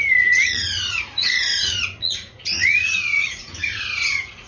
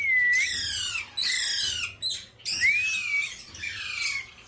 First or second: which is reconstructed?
first